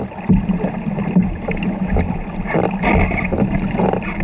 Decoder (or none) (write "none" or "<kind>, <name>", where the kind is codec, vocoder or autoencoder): none